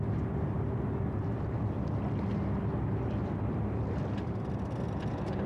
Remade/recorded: recorded